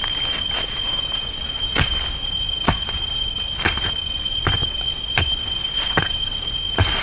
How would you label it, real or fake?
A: real